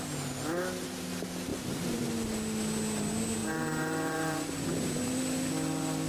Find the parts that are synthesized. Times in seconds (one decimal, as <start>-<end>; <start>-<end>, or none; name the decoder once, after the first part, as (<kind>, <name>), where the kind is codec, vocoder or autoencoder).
1.5-2.0 (vocoder, BigVGAN v2); 3.4-5.5